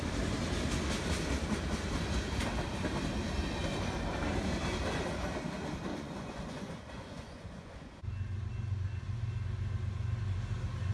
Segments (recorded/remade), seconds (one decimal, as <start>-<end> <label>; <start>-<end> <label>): 0.0-5.9 recorded; 5.9-8.0 remade; 8.0-10.9 recorded